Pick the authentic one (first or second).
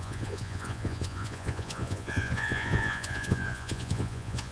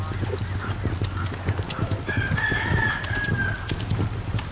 second